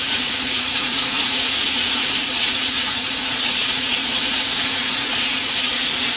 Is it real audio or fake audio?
fake